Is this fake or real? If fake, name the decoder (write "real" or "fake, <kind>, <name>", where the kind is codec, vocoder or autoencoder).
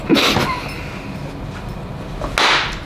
real